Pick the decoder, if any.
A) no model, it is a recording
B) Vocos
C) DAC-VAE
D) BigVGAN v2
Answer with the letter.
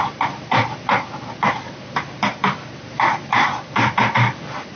D